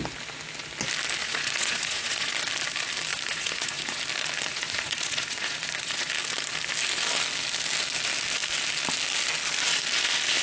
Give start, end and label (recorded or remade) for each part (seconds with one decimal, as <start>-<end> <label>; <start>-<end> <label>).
0.0-1.2 recorded; 1.2-2.3 remade; 2.3-3.1 recorded; 3.1-4.0 remade; 4.0-4.5 recorded; 4.5-6.1 remade; 6.1-10.4 recorded